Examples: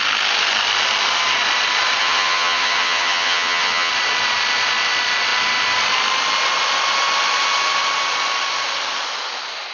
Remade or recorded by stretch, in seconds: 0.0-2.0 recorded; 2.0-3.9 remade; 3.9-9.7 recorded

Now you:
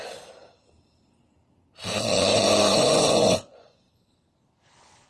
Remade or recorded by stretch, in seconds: 0.0-2.3 recorded; 2.3-3.8 remade; 3.8-5.1 recorded

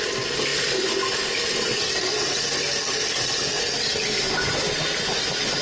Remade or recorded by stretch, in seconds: 0.0-5.6 recorded

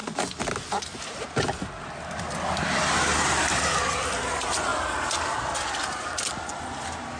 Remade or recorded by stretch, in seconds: 0.0-7.2 recorded

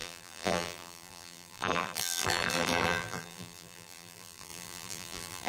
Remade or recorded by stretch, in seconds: 0.0-5.5 remade

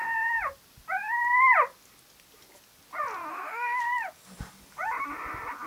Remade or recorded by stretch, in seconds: 0.0-3.3 recorded; 3.3-3.8 remade; 3.8-5.7 recorded

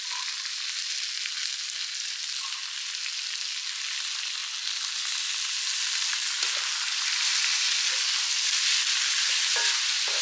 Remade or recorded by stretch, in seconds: 0.0-10.2 recorded